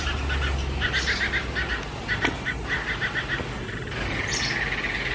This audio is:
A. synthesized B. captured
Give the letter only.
B